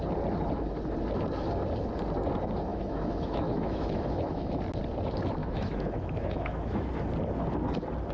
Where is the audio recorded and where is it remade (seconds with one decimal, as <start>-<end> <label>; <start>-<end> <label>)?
0.0-2.7 recorded; 2.7-4.6 remade; 4.6-5.4 recorded; 5.4-6.9 remade; 6.9-8.1 recorded